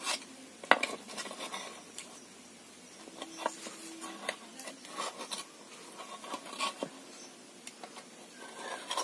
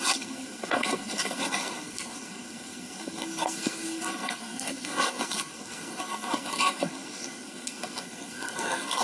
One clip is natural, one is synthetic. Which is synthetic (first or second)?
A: second